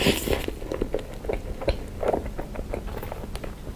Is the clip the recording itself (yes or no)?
yes